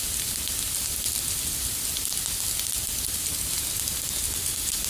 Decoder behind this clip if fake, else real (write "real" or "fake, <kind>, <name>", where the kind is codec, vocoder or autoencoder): real